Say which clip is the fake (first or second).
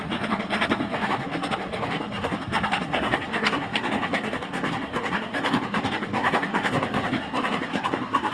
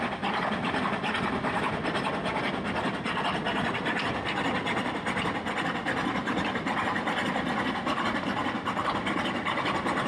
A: first